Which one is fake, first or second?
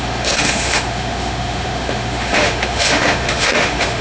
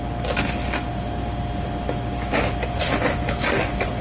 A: first